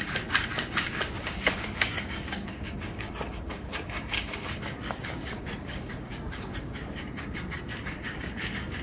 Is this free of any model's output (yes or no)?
no